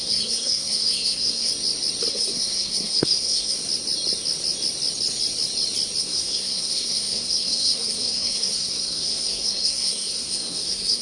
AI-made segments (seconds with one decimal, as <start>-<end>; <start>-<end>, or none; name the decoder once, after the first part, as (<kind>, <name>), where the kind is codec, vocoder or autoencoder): 0.0-1.5 (codec, SNAC); 2.1-3.6; 6.0-11.0